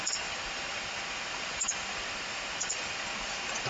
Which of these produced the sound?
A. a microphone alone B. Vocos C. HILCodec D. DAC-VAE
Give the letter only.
A